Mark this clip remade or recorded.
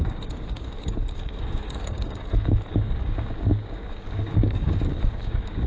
remade